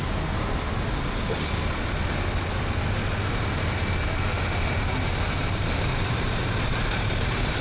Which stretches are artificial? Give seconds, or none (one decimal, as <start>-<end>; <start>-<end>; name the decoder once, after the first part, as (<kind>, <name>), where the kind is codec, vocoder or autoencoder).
5.4-7.6 (vocoder, BigVGAN v2)